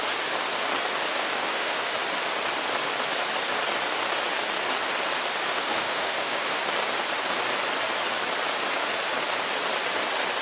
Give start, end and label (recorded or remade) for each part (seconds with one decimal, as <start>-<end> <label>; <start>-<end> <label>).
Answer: 0.0-1.1 recorded; 1.1-1.9 remade; 1.9-5.5 recorded; 5.5-6.6 remade; 6.6-10.4 recorded

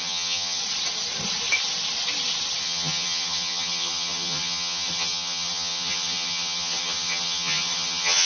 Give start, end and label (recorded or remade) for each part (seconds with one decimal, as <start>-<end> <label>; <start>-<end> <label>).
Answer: 0.0-0.6 remade; 0.6-2.6 recorded; 2.6-8.2 remade

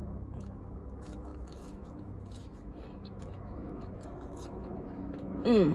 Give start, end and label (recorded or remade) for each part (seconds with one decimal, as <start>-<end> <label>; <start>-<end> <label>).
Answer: 0.0-5.7 remade

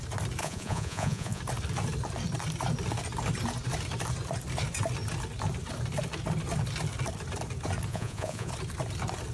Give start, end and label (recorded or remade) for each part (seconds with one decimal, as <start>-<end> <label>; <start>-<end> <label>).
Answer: 0.0-0.4 recorded; 0.4-1.4 remade; 1.4-7.9 recorded; 7.9-8.5 remade; 8.5-9.3 recorded

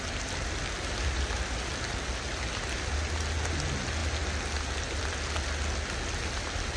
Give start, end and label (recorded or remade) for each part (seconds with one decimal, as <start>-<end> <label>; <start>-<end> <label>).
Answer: 0.0-6.8 recorded

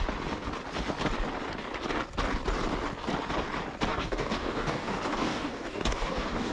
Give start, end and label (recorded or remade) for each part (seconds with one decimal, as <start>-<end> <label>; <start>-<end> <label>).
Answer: 0.0-3.9 recorded; 3.9-6.5 remade

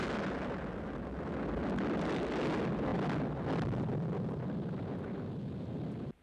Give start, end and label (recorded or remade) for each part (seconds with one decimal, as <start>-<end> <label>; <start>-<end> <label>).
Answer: 0.0-6.2 recorded